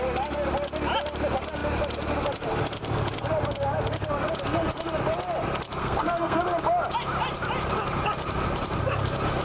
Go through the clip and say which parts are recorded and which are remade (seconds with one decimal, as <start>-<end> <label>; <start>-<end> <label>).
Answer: 0.0-5.8 recorded; 5.8-6.4 remade; 6.4-9.4 recorded